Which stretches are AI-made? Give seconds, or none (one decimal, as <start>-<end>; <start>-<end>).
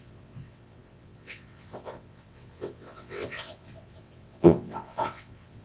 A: 0.0-5.6